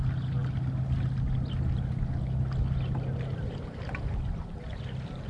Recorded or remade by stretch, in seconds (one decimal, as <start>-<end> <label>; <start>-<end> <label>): 0.0-5.3 recorded